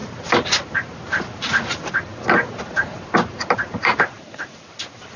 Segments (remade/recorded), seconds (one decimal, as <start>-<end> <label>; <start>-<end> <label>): 0.0-5.2 recorded